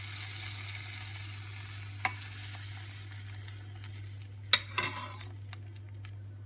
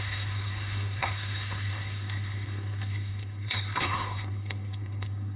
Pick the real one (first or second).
first